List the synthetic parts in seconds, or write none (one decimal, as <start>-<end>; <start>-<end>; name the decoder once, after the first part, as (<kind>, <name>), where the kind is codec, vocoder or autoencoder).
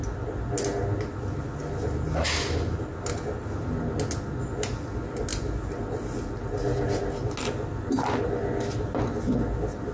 none